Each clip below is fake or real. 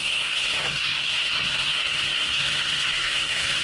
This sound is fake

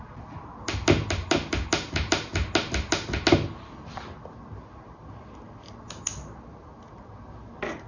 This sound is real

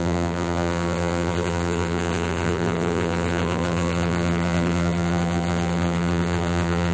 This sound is fake